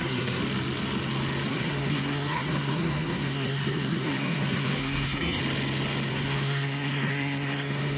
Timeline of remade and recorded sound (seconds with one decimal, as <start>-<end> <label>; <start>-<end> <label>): 0.0-0.4 remade; 0.4-1.5 recorded; 1.5-5.4 remade; 5.4-6.1 recorded; 6.1-8.0 remade